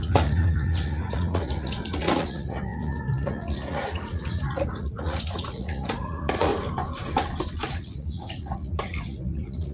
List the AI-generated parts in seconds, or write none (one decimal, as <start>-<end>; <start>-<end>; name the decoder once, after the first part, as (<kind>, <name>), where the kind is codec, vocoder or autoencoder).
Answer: 0.0-6.5 (vocoder, Vocos); 7.7-9.7